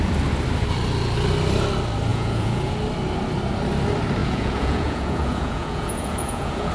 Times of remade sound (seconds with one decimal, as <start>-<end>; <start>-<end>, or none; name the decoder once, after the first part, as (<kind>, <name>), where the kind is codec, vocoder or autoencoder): 2.1-2.7 (vocoder, Vocos); 4.2-6.7

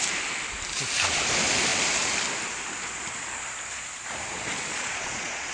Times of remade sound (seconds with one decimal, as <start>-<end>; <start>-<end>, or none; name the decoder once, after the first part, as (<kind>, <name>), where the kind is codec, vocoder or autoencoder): 4.7-5.5 (vocoder, Vocos)